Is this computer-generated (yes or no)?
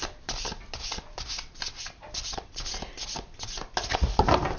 no